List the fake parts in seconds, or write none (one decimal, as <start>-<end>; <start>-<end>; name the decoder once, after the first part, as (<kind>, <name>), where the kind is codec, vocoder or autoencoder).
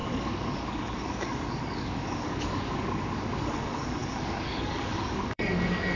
0.0-6.0 (codec, DAC)